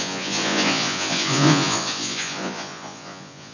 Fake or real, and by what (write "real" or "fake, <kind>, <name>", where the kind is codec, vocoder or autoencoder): fake, vocoder, Vocos